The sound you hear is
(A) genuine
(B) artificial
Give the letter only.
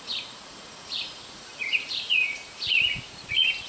B